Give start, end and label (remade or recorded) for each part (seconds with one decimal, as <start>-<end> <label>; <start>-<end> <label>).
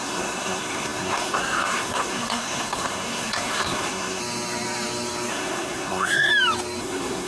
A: 0.0-4.2 remade; 4.2-5.3 recorded; 5.3-6.3 remade; 6.3-6.8 recorded; 6.8-7.3 remade